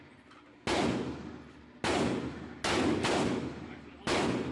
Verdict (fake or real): real